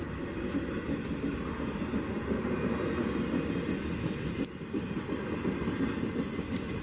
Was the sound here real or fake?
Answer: real